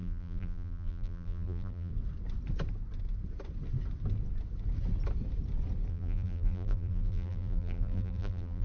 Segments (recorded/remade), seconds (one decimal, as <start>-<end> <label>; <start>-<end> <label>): 0.0-1.9 remade; 1.9-5.9 recorded; 5.9-8.6 remade